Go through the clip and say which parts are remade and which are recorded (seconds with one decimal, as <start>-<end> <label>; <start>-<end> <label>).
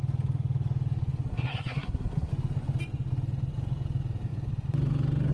0.0-1.3 recorded; 1.3-2.3 remade; 2.3-5.3 recorded